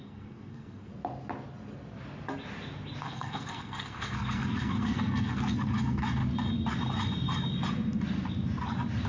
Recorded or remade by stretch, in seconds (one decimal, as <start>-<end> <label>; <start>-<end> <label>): 0.0-0.9 remade; 0.9-3.0 recorded; 3.0-6.2 remade; 6.2-9.1 recorded